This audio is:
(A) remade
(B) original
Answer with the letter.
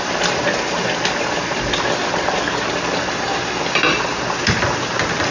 B